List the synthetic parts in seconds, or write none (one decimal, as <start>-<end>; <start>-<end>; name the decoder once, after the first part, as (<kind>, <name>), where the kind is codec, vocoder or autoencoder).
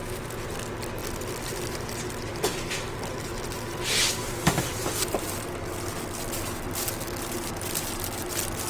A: none